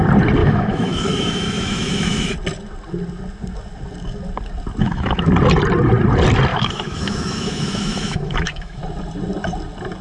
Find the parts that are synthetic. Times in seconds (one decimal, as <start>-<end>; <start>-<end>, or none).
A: 0.4-2.3; 4.8-5.3; 6.5-8.8

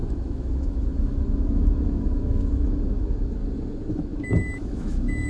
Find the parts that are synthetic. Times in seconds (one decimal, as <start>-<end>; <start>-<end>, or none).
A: 0.0-3.4; 3.9-5.3

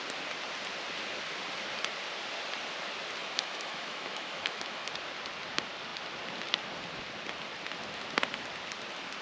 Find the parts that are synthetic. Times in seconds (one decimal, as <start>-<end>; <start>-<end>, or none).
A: 3.2-4.9

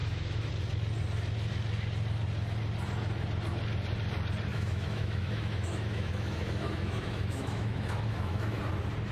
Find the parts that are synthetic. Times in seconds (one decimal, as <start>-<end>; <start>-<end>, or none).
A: 0.0-0.5; 4.5-8.6

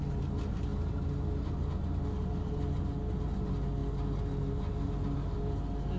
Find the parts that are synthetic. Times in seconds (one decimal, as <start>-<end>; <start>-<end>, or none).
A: none

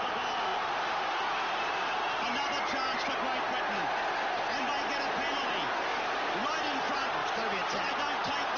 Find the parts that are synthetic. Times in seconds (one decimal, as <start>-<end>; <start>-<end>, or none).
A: none

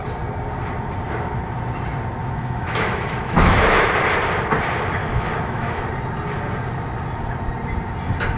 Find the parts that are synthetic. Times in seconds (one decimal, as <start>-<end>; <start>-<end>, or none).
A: 2.2-3.9; 5.0-5.8

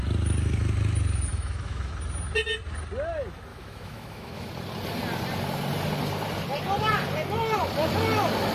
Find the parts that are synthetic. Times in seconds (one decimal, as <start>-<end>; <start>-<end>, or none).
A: 1.3-1.9; 3.5-4.5